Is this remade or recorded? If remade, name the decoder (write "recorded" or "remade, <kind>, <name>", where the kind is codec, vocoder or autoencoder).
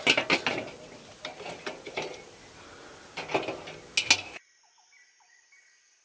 recorded